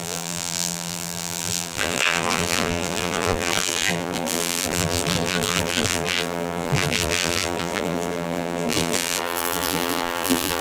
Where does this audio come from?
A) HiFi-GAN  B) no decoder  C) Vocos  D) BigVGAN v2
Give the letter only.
D